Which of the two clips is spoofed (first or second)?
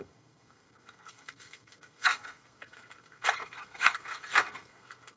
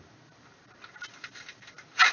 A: first